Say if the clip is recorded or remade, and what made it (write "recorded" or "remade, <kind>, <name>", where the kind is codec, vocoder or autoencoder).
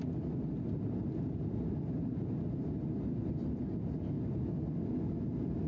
recorded